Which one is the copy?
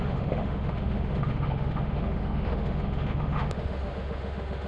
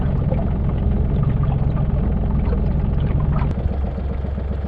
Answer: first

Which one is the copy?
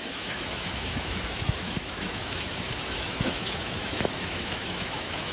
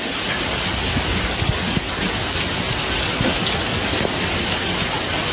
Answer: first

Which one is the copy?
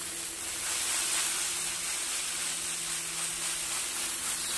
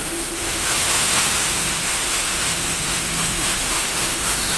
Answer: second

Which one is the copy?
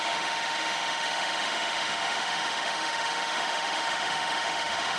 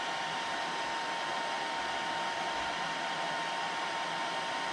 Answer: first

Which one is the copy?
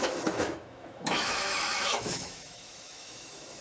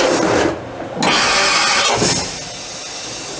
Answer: first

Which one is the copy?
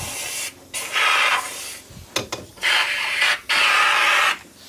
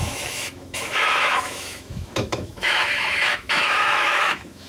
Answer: second